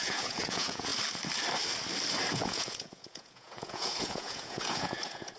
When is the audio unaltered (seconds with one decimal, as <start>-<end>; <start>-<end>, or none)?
0.9-2.3